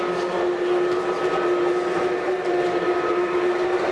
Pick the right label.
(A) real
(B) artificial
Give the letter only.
A